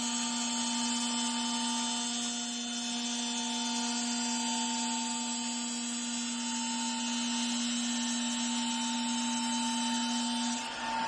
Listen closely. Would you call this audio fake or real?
real